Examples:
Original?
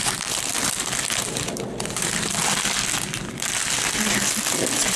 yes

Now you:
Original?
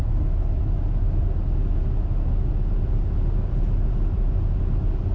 yes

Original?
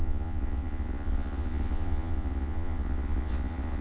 no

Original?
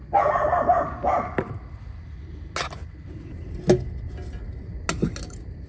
yes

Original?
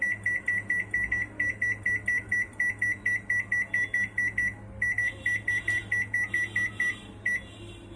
yes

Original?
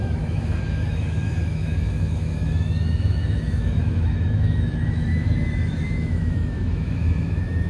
no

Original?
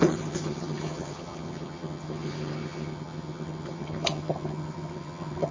no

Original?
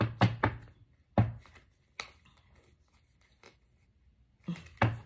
yes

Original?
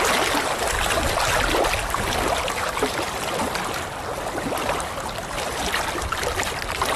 yes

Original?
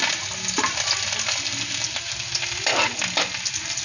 yes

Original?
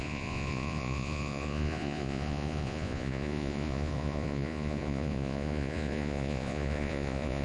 no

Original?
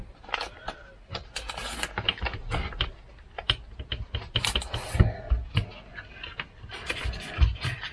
yes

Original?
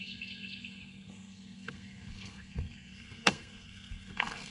no